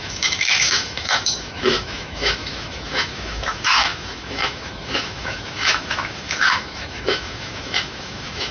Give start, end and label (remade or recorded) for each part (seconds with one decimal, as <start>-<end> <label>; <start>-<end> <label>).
0.0-8.5 remade